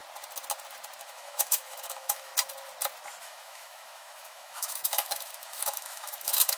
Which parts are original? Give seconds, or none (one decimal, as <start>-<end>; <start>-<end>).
0.0-1.0; 2.3-3.2